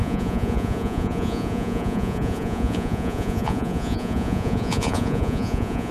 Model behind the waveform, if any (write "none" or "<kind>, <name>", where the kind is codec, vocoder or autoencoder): vocoder, Vocos